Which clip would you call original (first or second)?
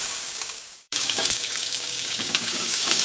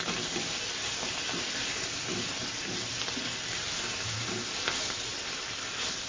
second